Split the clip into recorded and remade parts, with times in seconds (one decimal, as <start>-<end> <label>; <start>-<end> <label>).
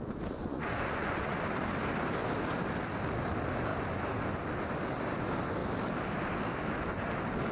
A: 0.0-0.4 recorded; 0.4-1.4 remade; 1.4-7.5 recorded